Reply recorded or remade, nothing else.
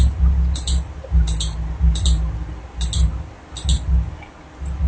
recorded